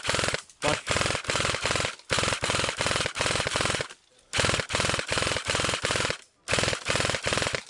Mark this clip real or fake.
real